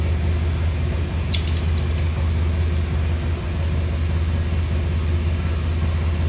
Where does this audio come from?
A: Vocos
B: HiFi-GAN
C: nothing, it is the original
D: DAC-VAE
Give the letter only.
C